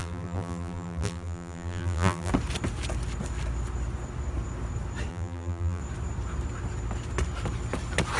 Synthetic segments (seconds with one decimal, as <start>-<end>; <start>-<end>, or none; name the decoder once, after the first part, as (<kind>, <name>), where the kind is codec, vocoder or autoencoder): 0.0-2.3 (vocoder, BigVGAN v2); 5.1-5.8